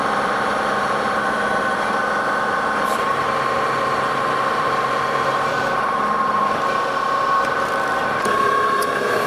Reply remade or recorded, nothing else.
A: remade